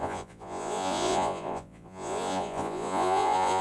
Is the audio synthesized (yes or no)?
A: yes